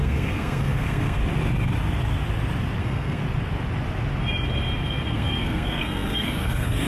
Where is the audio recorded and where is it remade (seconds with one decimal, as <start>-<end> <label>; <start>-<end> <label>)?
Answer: 0.0-1.2 remade; 1.2-2.8 recorded; 2.8-3.2 remade; 3.2-4.8 recorded; 4.8-6.9 remade